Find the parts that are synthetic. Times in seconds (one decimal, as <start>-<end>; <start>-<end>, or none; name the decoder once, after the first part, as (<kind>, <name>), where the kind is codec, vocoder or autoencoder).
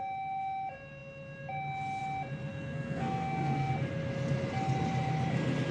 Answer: 2.5-3.7 (codec, SNAC)